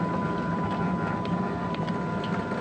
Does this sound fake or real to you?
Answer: real